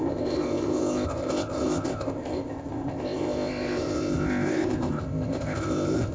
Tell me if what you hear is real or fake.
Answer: fake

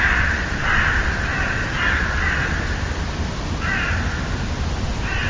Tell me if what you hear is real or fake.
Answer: real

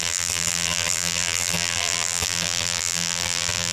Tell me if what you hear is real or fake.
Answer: fake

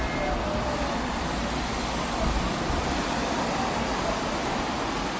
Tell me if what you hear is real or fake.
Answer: real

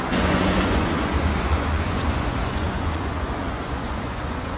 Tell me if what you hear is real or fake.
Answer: fake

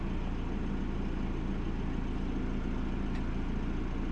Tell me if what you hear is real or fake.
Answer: real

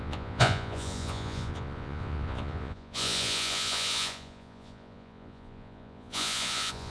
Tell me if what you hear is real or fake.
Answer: fake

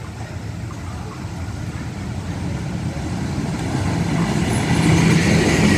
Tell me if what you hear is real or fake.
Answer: real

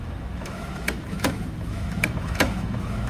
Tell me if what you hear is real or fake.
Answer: fake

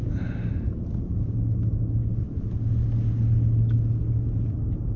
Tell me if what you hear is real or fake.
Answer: real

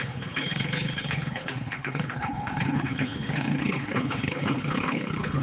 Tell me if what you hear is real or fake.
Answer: fake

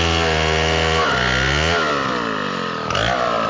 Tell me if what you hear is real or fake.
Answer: real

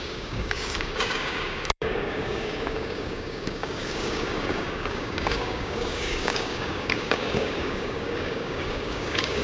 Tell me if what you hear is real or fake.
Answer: fake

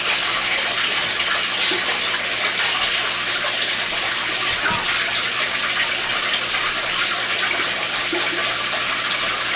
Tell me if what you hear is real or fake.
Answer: real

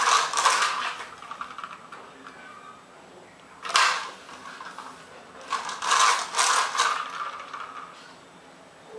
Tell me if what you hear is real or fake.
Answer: real